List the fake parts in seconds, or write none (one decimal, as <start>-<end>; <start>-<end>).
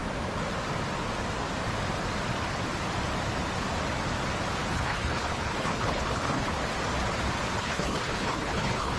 4.7-6.6; 7.6-9.0